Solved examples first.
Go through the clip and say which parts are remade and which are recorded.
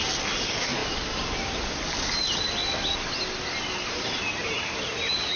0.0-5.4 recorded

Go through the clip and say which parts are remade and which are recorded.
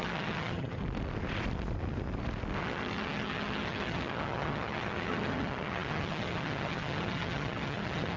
0.0-0.8 remade; 0.8-2.6 recorded; 2.6-8.2 remade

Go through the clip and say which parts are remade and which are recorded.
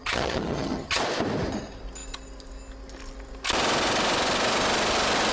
0.0-1.0 remade; 1.0-5.3 recorded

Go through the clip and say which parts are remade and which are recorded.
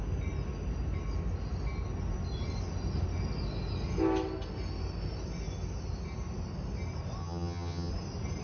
0.0-7.2 recorded; 7.2-7.9 remade; 7.9-8.4 recorded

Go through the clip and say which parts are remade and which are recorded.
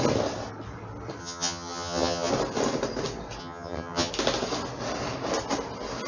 0.0-1.2 recorded; 1.2-2.3 remade; 2.3-3.4 recorded; 3.4-4.1 remade; 4.1-6.1 recorded